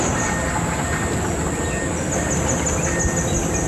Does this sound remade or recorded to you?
recorded